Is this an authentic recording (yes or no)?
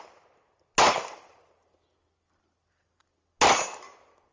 yes